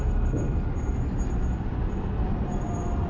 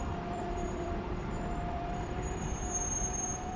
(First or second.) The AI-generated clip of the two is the second